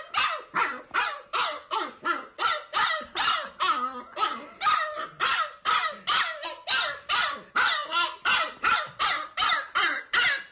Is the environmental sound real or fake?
real